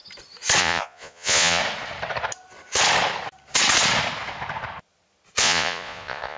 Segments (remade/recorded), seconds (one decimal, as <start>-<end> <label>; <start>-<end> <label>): 0.0-0.6 recorded; 0.6-1.6 remade; 1.6-5.4 recorded; 5.4-6.4 remade